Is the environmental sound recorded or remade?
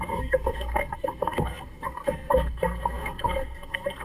remade